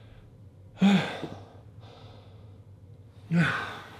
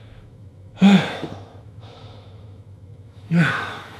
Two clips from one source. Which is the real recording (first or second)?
first